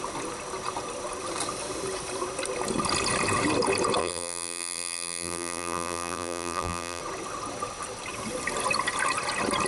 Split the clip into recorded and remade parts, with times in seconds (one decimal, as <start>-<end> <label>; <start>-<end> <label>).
0.0-4.0 recorded; 4.0-7.0 remade; 7.0-9.7 recorded